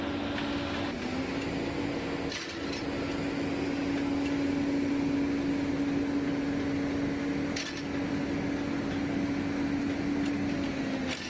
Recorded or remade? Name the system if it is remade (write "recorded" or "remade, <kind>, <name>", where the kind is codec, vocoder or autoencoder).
recorded